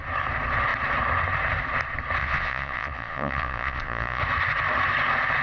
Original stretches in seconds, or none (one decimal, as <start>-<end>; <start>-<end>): 0.0-2.2; 4.2-5.4